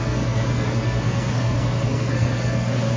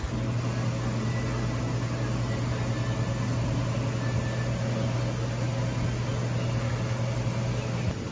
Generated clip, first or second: first